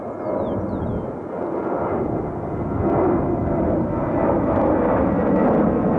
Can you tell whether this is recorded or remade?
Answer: recorded